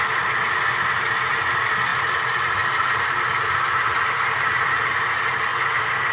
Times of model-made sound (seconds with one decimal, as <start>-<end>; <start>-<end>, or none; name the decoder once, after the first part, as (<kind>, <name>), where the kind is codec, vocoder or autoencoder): none